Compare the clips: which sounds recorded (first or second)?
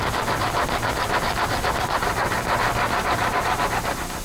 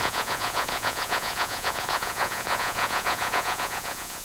first